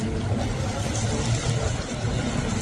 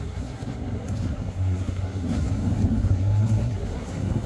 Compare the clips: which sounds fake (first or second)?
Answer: second